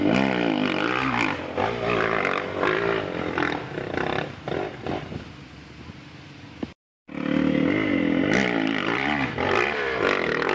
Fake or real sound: real